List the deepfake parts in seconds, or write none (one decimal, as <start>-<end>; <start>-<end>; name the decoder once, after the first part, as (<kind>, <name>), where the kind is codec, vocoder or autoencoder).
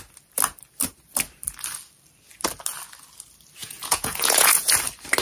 3.6-4.7 (vocoder, Vocos)